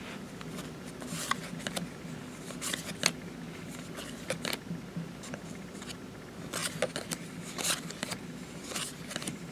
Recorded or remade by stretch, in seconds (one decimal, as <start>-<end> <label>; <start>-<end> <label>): 0.0-9.5 recorded